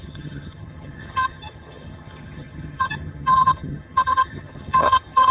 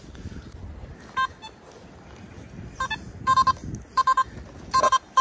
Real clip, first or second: second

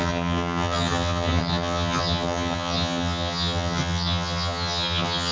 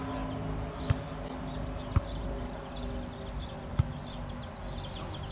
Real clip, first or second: second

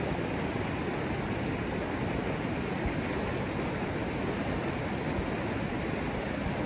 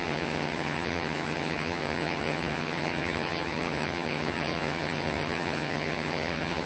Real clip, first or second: first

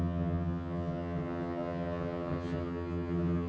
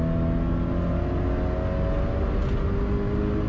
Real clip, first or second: second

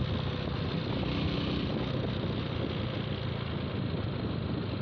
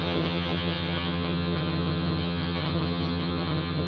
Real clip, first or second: first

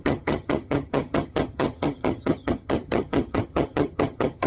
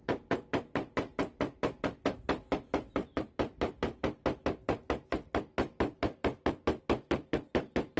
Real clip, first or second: second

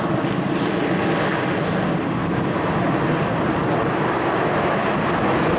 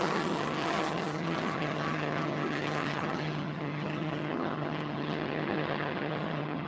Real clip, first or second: first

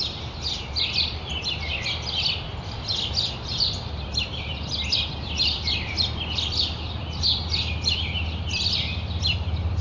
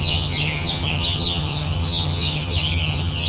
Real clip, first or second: first